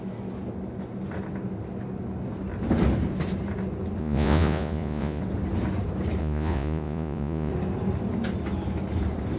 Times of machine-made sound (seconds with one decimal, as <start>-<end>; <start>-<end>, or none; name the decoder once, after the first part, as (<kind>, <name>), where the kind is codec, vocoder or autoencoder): 4.0-5.2 (vocoder, Vocos); 6.2-7.5

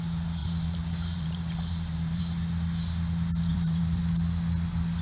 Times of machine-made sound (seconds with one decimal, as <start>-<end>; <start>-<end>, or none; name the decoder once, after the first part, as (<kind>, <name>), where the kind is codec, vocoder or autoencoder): 0.4-2.2 (vocoder, BigVGAN v2); 3.5-4.0

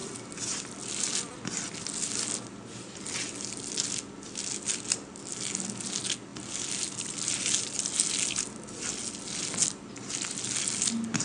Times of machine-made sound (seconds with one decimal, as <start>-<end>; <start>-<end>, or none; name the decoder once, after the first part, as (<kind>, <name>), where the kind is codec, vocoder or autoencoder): none

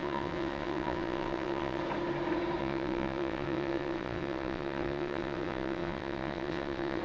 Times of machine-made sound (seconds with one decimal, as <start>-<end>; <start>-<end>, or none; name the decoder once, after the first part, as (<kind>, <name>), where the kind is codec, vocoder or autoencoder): 0.0-1.8 (vocoder, WaveNeXt); 2.6-7.0

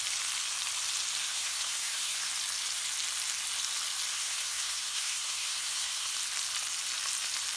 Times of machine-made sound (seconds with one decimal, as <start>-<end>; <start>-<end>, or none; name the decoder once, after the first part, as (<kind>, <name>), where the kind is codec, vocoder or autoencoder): 1.2-2.3 (codec, SNAC); 4.1-6.1

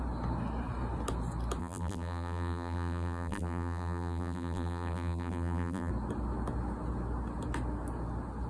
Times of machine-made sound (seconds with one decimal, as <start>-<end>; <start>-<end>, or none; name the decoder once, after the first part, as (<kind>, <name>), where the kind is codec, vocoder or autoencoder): 1.6-5.9 (vocoder, BigVGAN v2)